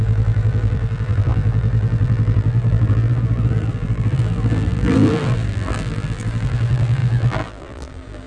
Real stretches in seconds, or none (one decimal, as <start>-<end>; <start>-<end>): none